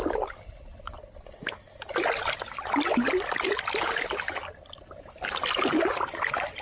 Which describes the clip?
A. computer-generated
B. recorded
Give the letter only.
B